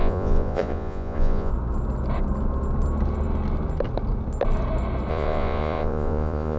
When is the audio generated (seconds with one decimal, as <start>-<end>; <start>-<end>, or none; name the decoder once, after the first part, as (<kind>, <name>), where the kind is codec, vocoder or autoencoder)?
0.0-1.5 (vocoder, Vocos); 5.1-6.6